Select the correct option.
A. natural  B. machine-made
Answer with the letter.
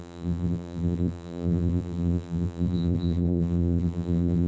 B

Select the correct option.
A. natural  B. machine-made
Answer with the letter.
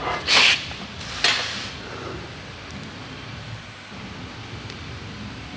B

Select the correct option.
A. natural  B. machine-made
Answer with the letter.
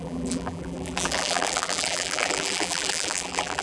B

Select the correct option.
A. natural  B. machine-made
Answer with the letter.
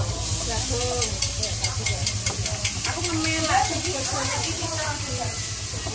A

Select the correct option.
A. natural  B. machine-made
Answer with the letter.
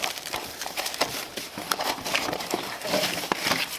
B